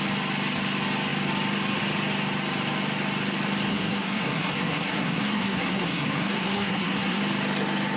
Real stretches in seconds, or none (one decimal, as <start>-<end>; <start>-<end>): 0.0-3.7; 7.2-8.0